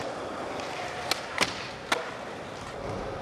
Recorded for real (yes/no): yes